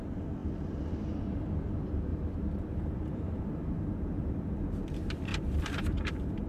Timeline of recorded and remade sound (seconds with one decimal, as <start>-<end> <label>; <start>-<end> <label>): 0.0-2.1 recorded; 2.1-4.8 remade; 4.8-5.3 recorded; 5.3-6.5 remade